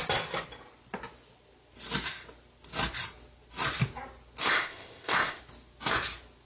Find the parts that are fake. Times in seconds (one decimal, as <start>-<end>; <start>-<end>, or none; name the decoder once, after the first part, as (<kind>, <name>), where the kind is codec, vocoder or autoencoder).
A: 4.4-5.4 (codec, ZipCodec)